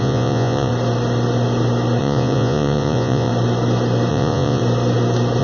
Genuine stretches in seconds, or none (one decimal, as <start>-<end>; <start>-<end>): 0.7-2.0; 3.3-4.1; 4.6-5.4